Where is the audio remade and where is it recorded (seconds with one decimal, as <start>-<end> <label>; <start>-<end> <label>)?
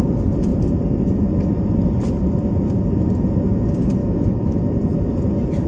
0.0-4.0 recorded; 4.0-4.6 remade; 4.6-5.7 recorded